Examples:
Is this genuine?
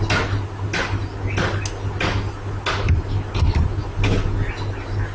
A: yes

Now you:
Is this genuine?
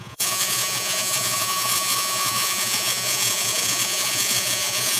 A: no